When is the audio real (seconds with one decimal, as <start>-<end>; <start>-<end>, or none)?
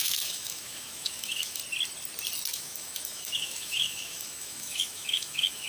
1.6-2.5